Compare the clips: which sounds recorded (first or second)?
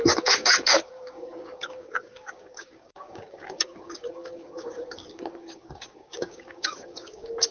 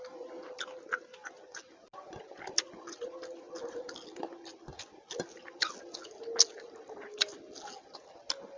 second